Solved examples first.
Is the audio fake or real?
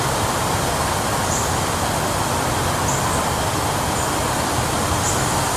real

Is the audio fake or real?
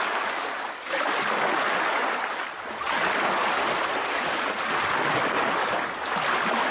real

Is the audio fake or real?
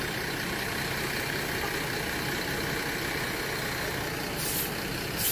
real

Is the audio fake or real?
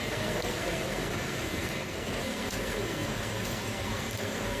fake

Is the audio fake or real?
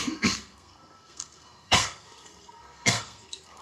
fake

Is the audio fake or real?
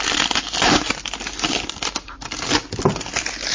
real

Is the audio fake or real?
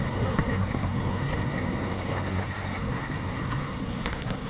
fake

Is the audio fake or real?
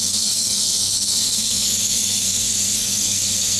fake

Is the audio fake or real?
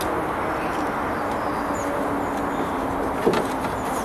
real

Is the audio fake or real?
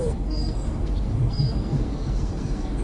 fake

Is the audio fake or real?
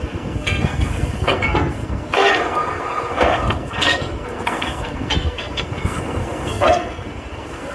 fake